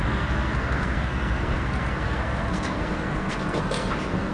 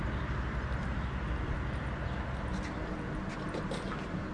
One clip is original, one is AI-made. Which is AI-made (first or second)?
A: first